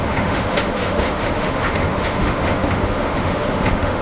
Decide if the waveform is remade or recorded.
remade